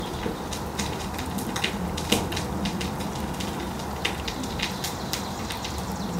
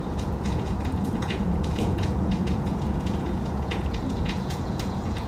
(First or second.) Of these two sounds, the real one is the first